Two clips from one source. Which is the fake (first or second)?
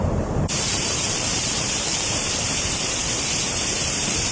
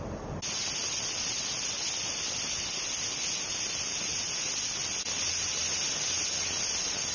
first